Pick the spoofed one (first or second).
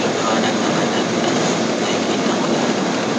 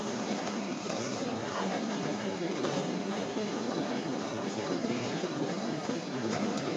second